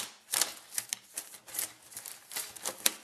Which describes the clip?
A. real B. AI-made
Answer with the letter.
A